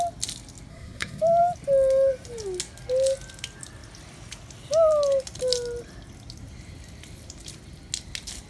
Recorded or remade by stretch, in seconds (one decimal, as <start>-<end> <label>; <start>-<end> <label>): 0.0-0.7 recorded; 0.7-1.2 remade; 1.2-8.5 recorded